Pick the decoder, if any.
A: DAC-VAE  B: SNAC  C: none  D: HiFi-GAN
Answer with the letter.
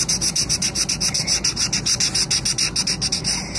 C